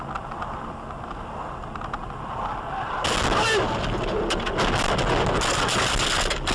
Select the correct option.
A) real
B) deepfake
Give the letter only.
A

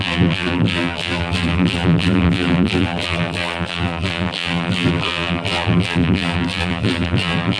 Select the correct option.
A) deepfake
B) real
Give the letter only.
A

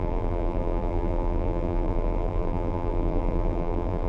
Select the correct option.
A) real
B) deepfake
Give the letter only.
B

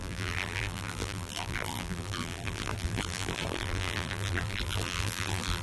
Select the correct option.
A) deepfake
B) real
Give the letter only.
A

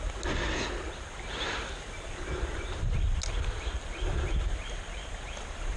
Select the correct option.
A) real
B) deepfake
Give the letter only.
A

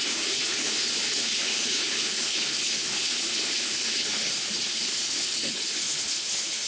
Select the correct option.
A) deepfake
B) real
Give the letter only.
A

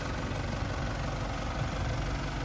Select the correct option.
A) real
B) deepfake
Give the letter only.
A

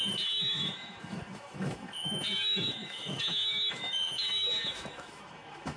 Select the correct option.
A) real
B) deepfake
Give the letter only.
B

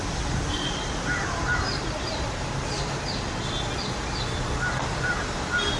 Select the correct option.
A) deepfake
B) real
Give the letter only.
B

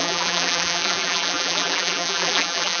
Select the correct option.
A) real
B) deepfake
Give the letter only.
B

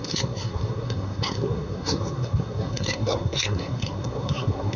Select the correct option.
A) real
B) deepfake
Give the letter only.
B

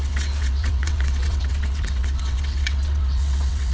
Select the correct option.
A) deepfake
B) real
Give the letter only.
A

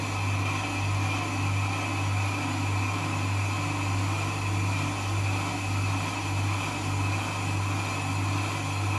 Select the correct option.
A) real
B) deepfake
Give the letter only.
A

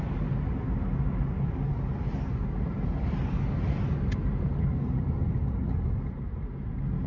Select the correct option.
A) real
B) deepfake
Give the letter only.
A